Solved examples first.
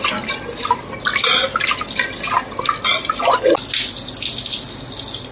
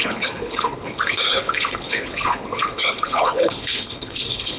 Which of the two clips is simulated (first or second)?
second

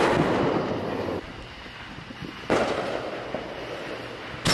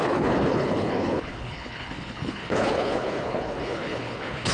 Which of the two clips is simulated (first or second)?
second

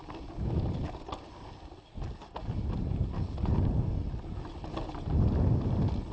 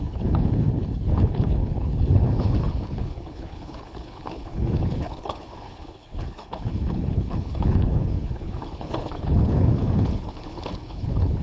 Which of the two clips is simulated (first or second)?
second